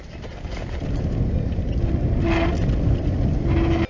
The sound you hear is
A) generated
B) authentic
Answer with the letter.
B